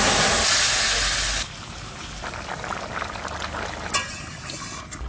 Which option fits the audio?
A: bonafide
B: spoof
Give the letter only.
A